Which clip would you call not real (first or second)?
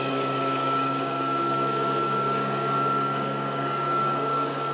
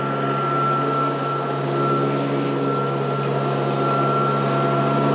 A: first